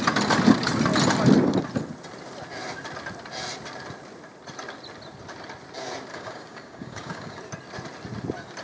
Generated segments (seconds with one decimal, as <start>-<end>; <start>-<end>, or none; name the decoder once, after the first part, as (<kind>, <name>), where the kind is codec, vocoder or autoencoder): 6.1-7.4 (codec, DAC)